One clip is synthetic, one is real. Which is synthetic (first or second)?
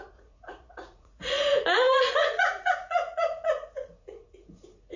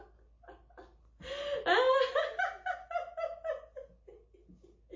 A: first